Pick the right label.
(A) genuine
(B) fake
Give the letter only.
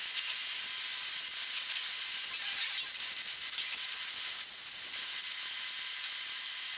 A